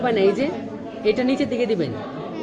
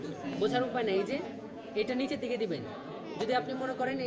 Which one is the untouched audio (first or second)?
first